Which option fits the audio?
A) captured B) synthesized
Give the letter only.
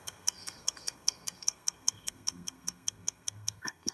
B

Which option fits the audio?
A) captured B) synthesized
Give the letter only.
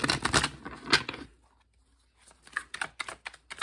A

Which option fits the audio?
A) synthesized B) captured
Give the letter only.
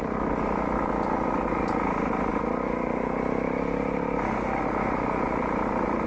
B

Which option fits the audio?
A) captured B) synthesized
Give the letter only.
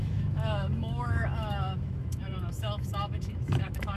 B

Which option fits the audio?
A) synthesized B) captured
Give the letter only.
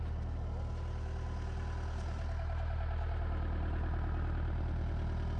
B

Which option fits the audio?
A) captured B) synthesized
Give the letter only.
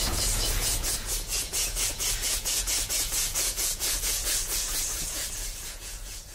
B